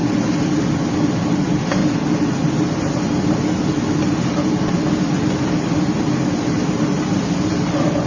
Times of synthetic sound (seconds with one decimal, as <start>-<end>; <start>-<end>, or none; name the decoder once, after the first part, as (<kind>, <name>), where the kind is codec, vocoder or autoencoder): none